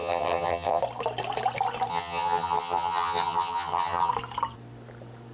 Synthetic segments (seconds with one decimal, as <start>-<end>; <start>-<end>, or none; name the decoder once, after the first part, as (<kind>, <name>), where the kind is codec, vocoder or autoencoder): 0.0-0.8 (vocoder, HiFi-GAN); 1.9-4.1